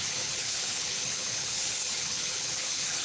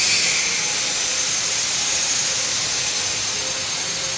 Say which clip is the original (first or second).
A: second